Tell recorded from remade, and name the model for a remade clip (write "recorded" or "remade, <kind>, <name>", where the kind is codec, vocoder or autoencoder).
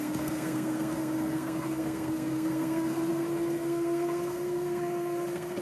remade, codec, SNAC